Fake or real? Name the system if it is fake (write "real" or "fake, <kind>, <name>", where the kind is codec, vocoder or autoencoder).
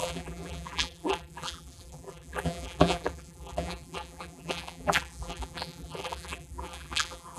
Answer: fake, vocoder, BigVGAN v2